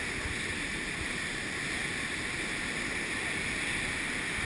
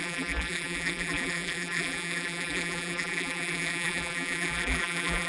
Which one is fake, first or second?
second